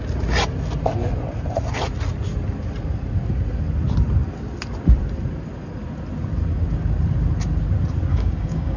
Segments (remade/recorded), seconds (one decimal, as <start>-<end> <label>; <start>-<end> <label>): 0.0-8.1 recorded; 8.1-8.8 remade